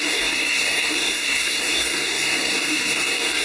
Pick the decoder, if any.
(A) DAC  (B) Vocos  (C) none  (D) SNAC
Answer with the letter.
D